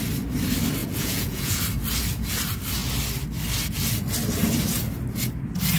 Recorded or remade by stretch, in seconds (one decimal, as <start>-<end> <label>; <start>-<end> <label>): 0.0-0.8 recorded; 0.8-1.6 remade; 1.6-5.8 recorded